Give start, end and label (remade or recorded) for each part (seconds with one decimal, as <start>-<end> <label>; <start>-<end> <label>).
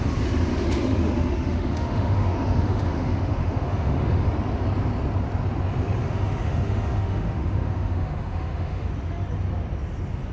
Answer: 0.0-0.5 recorded; 0.5-4.3 remade; 4.3-6.0 recorded; 6.0-8.9 remade; 8.9-10.3 recorded